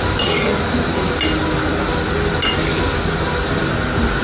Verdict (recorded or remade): recorded